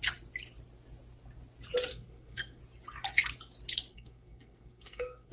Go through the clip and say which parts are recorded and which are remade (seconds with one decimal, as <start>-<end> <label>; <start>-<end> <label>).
0.0-1.9 recorded; 1.9-2.6 remade; 2.6-3.9 recorded; 3.9-5.3 remade